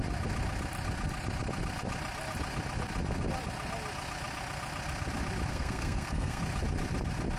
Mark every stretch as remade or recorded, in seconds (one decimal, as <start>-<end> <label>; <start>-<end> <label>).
0.0-5.5 recorded; 5.5-6.4 remade; 6.4-7.4 recorded